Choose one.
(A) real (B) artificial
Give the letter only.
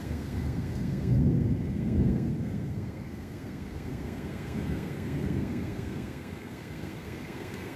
B